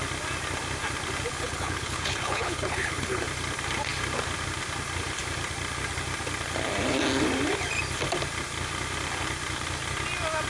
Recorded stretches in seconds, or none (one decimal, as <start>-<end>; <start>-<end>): 0.0-1.3; 3.2-10.5